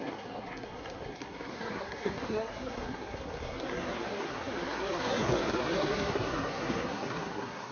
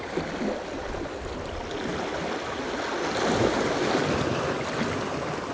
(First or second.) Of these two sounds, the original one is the second